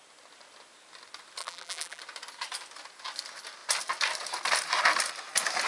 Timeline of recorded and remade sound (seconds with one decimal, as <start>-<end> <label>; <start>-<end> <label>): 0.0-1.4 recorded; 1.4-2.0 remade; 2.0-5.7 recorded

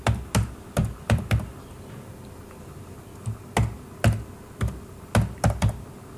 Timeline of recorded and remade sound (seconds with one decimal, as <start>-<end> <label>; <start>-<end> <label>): 0.0-0.8 recorded; 0.8-3.4 remade; 3.4-6.2 recorded

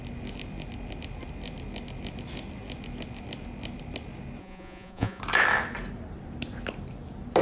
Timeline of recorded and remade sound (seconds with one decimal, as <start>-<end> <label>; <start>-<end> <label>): 0.0-4.4 recorded; 4.4-5.2 remade; 5.2-7.4 recorded

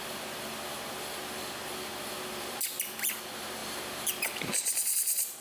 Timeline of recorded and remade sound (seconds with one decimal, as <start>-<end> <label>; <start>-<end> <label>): 0.0-5.4 remade

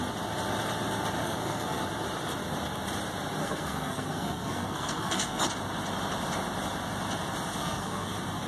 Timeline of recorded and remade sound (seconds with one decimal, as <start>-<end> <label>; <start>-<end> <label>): 0.0-1.2 recorded; 1.2-1.8 remade; 1.8-3.4 recorded; 3.4-5.4 remade; 5.4-7.6 recorded; 7.6-8.1 remade; 8.1-8.5 recorded

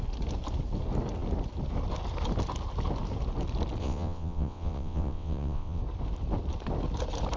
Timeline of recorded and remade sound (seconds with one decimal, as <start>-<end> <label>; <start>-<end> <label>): 0.0-3.8 recorded; 3.8-5.8 remade; 5.8-7.4 recorded

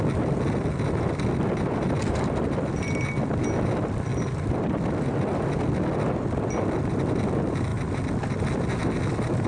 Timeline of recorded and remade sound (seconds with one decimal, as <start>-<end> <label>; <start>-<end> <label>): 0.0-9.5 recorded

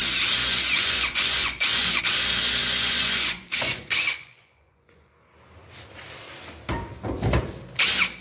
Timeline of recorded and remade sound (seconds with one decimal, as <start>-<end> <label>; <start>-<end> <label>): 0.0-0.4 recorded; 0.4-2.0 remade; 2.0-2.6 recorded; 2.6-5.1 remade; 5.1-8.2 recorded